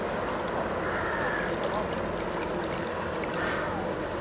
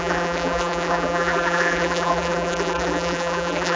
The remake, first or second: second